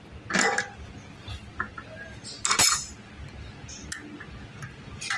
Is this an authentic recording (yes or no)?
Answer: yes